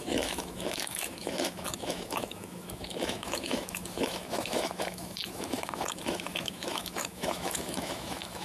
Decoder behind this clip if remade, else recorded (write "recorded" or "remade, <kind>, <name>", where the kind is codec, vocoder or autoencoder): remade, autoencoder, DAC-VAE